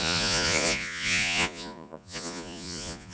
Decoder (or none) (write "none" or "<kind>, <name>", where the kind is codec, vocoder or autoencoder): vocoder, Vocos